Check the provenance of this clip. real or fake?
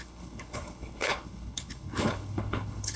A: fake